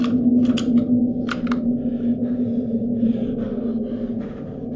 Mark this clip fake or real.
real